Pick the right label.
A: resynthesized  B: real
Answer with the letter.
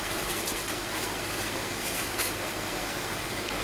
A